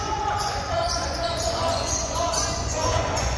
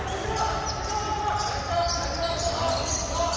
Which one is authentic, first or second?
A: second